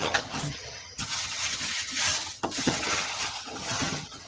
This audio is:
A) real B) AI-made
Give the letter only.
B